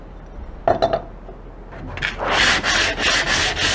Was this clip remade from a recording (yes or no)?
no